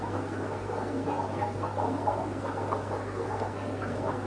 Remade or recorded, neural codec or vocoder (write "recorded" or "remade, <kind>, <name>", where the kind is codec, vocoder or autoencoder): remade, codec, SNAC